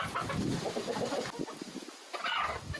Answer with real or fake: real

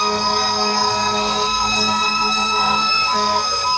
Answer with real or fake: fake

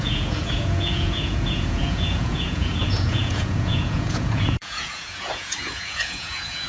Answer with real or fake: fake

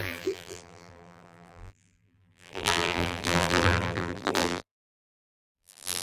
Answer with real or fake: fake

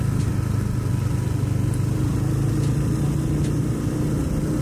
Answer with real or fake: real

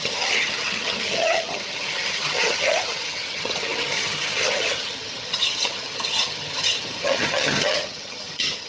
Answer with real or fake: fake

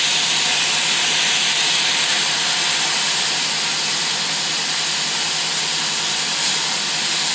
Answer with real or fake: real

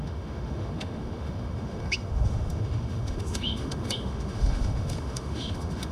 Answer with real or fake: fake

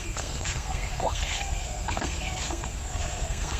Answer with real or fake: fake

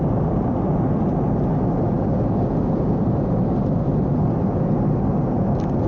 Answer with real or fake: real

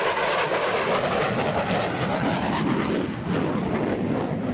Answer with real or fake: real